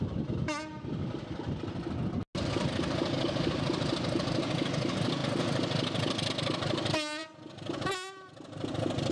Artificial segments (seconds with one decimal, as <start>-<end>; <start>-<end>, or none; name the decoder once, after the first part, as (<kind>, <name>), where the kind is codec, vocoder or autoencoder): none